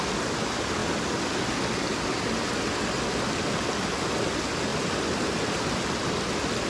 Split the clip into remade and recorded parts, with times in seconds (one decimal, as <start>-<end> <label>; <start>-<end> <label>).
0.0-6.7 recorded

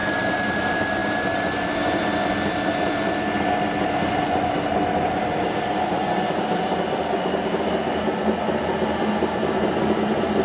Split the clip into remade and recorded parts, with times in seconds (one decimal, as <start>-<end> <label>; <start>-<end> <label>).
0.0-10.4 recorded

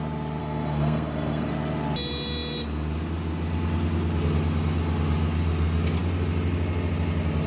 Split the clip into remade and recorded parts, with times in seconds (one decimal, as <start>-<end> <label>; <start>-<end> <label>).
0.0-0.4 recorded; 0.4-1.5 remade; 1.5-7.5 recorded

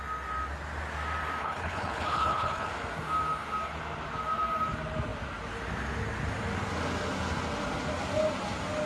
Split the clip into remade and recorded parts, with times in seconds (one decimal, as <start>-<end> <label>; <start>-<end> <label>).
0.0-1.4 recorded; 1.4-2.7 remade; 2.7-8.9 recorded

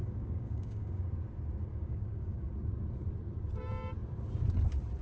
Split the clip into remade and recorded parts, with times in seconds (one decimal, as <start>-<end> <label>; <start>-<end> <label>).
0.0-1.1 remade; 1.1-1.7 recorded; 1.7-2.5 remade; 2.5-5.0 recorded

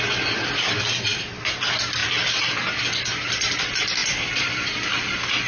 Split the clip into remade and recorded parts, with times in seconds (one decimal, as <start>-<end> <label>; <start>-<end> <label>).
0.0-5.5 recorded

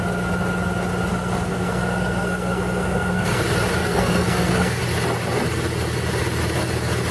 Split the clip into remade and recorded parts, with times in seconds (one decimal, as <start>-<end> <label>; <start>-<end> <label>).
0.0-1.1 recorded; 1.1-3.4 remade; 3.4-3.8 recorded; 3.8-4.8 remade; 4.8-7.1 recorded